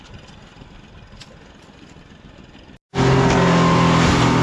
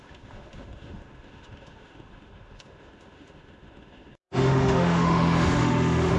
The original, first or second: first